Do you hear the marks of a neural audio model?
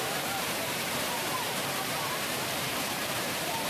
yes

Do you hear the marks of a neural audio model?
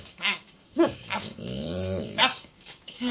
yes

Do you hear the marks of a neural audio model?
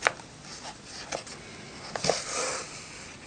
no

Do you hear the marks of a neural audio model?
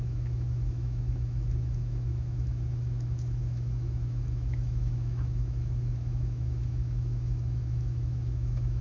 yes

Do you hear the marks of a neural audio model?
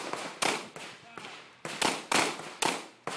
no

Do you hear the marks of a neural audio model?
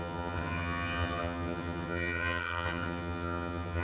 yes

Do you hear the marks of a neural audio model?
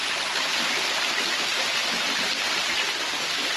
no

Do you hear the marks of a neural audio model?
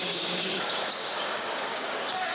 yes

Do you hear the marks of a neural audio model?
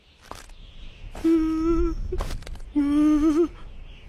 no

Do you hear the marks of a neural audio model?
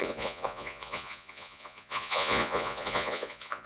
yes